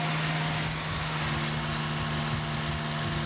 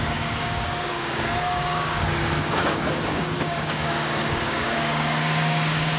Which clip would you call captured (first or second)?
first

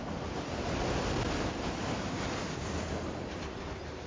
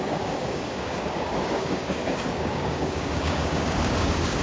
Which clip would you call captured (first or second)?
first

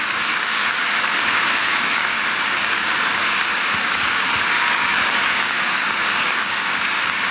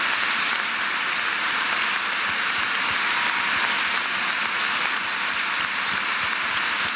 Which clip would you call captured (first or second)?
second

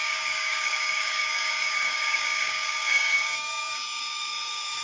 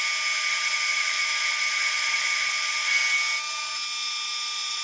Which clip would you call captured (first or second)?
second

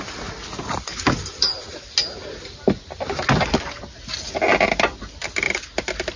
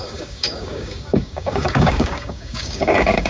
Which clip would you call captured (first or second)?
first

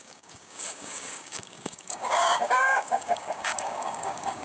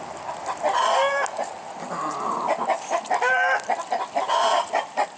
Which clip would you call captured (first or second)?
second